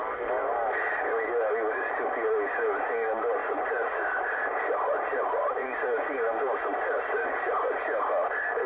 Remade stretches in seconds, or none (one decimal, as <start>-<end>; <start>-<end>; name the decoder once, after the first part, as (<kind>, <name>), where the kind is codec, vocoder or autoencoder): none